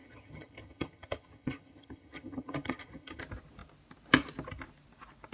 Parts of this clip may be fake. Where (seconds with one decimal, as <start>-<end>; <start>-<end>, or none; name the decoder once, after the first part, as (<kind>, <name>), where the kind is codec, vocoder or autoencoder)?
0.0-3.2 (vocoder, HiFi-GAN)